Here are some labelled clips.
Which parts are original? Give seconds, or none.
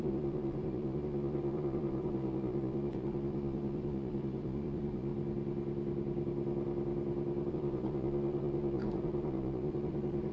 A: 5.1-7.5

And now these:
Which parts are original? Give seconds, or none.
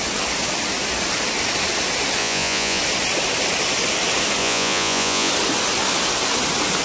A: 0.0-2.2; 2.8-4.4; 5.3-6.8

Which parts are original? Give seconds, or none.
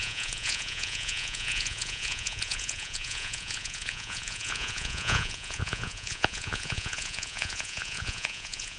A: none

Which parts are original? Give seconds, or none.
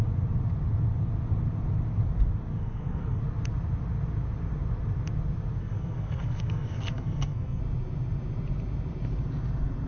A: 0.0-2.5; 3.2-5.6; 7.6-9.9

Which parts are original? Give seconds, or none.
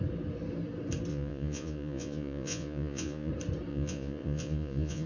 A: 0.0-1.1; 3.3-3.7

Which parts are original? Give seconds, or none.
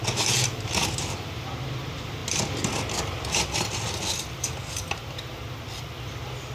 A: 0.0-6.5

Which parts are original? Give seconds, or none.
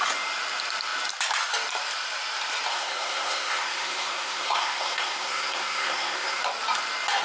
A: 0.0-2.7; 6.4-7.2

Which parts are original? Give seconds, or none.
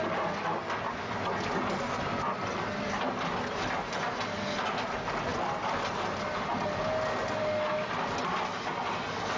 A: 0.0-9.4